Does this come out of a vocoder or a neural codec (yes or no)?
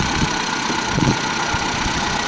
yes